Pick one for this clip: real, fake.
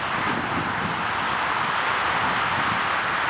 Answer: real